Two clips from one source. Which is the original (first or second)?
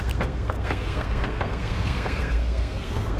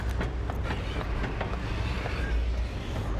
second